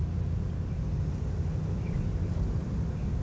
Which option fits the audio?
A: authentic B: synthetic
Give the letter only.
A